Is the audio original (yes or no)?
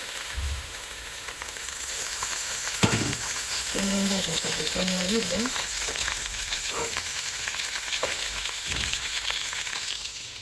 no